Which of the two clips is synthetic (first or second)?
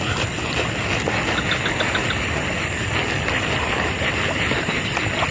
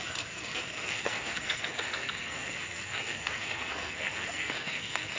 second